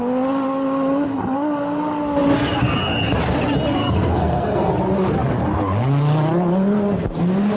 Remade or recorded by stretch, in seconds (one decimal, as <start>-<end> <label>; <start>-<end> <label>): 0.0-3.8 recorded; 3.8-4.7 remade; 4.7-7.6 recorded